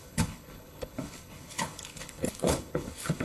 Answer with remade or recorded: remade